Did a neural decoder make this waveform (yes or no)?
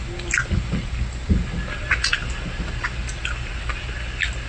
no